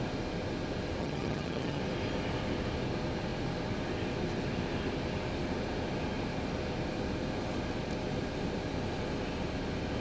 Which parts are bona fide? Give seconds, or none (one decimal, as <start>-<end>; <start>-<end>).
0.0-1.0; 1.8-10.0